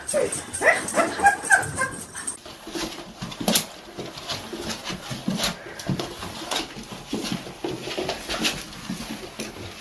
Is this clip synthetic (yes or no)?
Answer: yes